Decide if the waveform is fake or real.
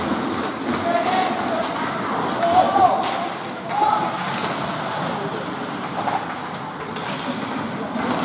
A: real